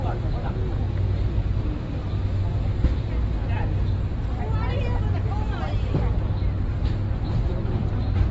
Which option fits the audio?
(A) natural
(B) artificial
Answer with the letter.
A